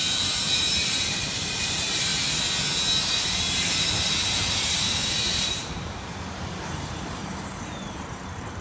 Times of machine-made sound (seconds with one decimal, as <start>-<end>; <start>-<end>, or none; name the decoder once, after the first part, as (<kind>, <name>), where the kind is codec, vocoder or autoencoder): 0.0-2.1 (vocoder, BigVGAN v2); 3.1-8.6